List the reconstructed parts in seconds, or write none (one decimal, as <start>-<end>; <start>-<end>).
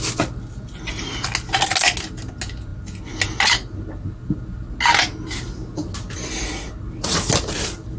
none